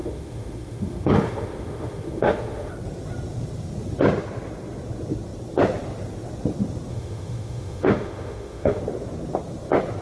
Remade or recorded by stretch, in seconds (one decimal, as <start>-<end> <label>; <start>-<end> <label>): 0.0-2.7 remade; 2.7-6.9 recorded; 6.9-8.8 remade; 8.8-10.0 recorded